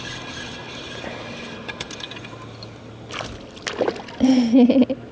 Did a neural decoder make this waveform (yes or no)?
no